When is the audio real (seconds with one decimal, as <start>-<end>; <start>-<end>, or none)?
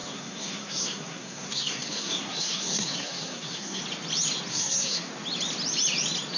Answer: 3.8-4.5; 5.1-6.4